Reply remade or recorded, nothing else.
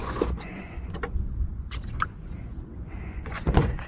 remade